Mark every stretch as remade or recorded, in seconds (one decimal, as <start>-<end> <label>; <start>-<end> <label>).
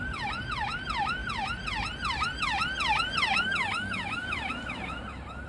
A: 0.0-5.5 recorded